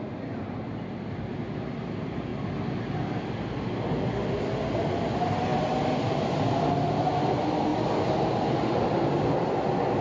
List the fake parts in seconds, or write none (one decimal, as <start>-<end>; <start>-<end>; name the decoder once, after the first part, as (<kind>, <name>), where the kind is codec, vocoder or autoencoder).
none